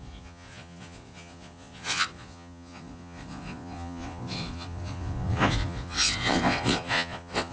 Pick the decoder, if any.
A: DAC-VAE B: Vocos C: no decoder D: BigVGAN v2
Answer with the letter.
B